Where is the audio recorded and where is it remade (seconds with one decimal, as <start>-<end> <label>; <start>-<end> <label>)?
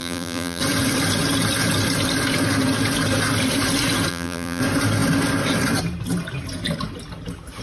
0.0-0.6 remade; 0.6-4.1 recorded; 4.1-4.6 remade; 4.6-7.6 recorded